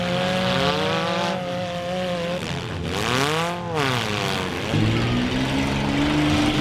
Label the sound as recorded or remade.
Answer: recorded